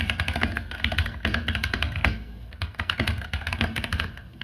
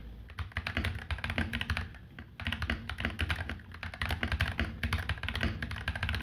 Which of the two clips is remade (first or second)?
first